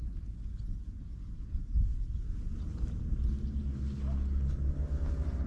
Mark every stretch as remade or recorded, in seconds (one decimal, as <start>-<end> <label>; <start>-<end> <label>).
0.0-5.5 recorded

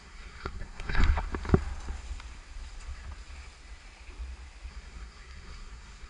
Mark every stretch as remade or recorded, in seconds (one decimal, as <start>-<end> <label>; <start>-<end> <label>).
0.0-1.0 remade; 1.0-4.7 recorded; 4.7-6.1 remade

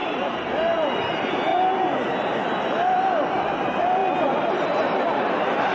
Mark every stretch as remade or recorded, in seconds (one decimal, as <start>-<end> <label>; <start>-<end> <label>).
0.0-1.1 remade; 1.1-5.7 recorded

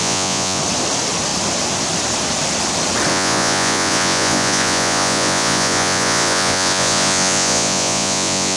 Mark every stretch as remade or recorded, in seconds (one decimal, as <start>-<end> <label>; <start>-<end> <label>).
0.0-0.6 remade; 0.6-3.1 recorded; 3.1-8.6 remade

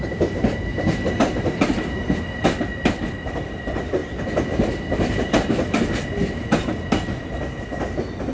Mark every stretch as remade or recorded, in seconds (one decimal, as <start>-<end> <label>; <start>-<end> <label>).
0.0-0.7 recorded; 0.7-1.2 remade; 1.2-8.3 recorded

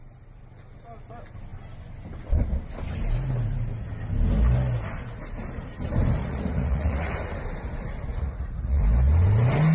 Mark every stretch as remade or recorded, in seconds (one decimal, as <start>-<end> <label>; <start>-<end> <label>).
0.0-6.2 recorded; 6.2-7.1 remade; 7.1-8.1 recorded; 8.1-8.8 remade; 8.8-9.7 recorded

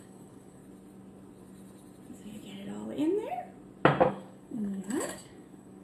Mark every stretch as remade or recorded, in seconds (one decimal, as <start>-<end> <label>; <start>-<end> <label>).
0.0-0.6 remade; 0.6-4.1 recorded; 4.1-5.8 remade